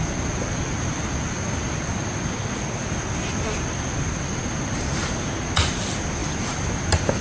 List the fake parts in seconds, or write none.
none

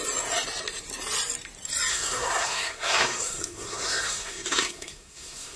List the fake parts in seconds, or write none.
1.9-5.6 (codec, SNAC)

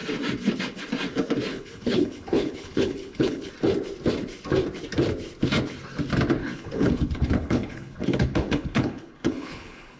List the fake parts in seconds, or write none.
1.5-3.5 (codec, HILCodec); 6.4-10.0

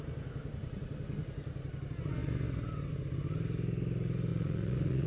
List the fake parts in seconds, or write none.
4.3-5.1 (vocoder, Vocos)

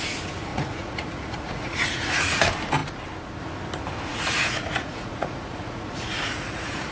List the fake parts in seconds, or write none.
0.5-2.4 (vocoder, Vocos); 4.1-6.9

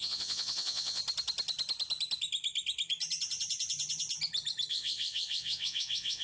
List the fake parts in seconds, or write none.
0.0-1.0 (vocoder, WaveNeXt); 4.7-6.2